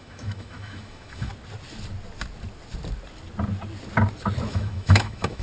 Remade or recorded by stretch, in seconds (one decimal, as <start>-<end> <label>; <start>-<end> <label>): 0.0-1.3 remade; 1.3-4.5 recorded; 4.5-5.4 remade

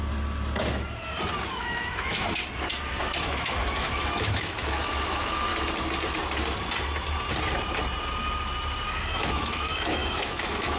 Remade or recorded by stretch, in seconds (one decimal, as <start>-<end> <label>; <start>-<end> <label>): 0.0-1.5 recorded; 1.5-2.4 remade; 2.4-3.0 recorded; 3.0-5.5 remade; 5.5-9.1 recorded; 9.1-10.8 remade

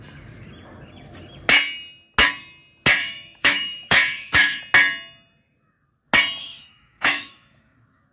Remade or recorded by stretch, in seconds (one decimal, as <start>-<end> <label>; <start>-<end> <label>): 0.0-3.0 recorded; 3.0-4.6 remade; 4.6-6.4 recorded; 6.4-8.1 remade

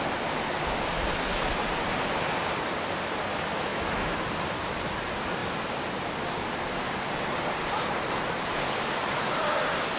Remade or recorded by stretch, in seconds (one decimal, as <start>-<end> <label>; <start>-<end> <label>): 0.0-3.7 recorded; 3.7-4.2 remade; 4.2-10.0 recorded

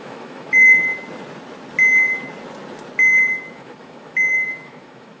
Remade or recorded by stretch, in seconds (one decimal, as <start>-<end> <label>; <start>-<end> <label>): 0.0-0.9 remade; 0.9-3.5 recorded; 3.5-5.2 remade

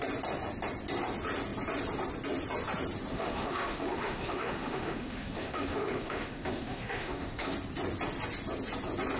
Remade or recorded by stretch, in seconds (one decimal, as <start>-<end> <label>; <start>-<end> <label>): 0.0-3.1 recorded; 3.1-7.5 remade; 7.5-9.2 recorded

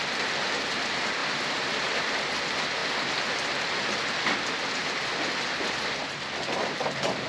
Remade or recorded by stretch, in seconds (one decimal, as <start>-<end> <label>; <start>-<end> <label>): 0.0-7.3 recorded

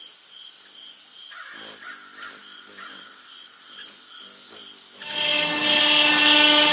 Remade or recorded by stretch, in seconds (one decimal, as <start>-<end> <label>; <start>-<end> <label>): 0.0-6.7 recorded